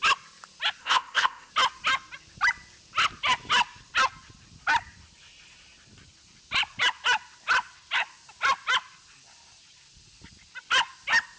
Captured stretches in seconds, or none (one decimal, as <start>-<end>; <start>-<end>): 0.0-0.8; 1.5-11.4